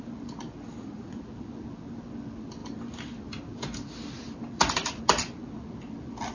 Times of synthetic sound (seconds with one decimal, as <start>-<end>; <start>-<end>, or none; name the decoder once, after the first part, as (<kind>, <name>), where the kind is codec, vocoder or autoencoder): 0.7-1.2 (vocoder, Vocos)